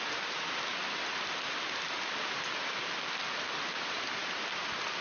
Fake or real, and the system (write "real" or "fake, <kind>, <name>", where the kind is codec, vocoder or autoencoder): real